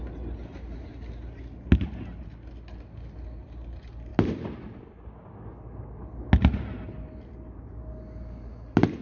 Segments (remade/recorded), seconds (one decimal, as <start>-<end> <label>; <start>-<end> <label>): 0.0-9.0 recorded

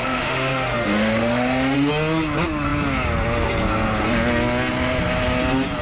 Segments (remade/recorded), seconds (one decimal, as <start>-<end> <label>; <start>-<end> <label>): 0.0-1.9 remade; 1.9-5.8 recorded